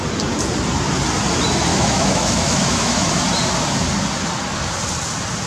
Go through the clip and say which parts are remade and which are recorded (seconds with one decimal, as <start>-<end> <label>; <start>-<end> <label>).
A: 0.0-1.7 recorded; 1.7-3.1 remade; 3.1-5.5 recorded